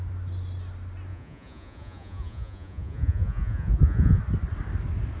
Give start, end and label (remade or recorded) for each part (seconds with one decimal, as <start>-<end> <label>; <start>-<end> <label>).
0.0-1.1 recorded; 1.1-4.2 remade; 4.2-5.2 recorded